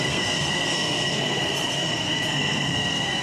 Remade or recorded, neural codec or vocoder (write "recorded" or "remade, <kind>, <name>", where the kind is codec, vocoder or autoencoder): remade, codec, SNAC